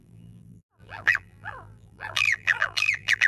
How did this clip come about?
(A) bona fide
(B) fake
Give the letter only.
B